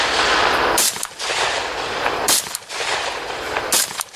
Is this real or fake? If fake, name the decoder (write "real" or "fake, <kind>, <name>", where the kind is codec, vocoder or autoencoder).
fake, vocoder, BigVGAN v2